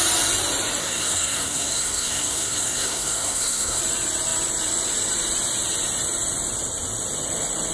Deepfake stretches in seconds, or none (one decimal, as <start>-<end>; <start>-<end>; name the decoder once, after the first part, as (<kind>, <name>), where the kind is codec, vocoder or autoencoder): 0.8-3.8 (codec, SNAC)